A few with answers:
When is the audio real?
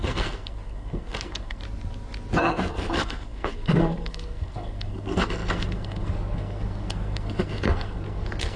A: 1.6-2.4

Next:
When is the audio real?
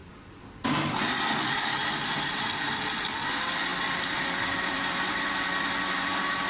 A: 0.0-3.7; 5.5-6.5